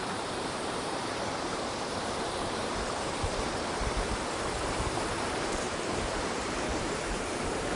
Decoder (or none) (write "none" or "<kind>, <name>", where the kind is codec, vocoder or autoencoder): vocoder, BigVGAN v2